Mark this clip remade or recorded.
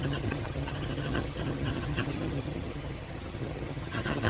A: remade